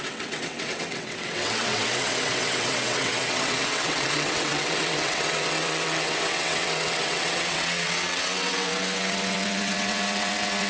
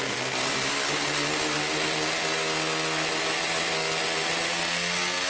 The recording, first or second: second